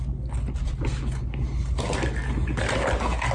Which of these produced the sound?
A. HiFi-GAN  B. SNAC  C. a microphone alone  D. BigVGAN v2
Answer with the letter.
C